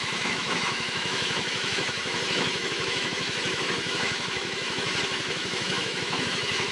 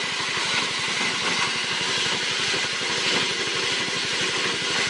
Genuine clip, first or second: second